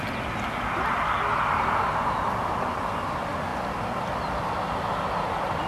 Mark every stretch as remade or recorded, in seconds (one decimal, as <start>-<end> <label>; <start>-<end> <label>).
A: 0.0-5.7 recorded